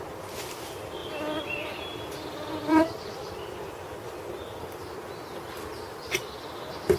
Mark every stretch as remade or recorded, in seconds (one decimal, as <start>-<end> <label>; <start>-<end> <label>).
0.0-1.0 recorded; 1.0-3.7 remade; 3.7-7.0 recorded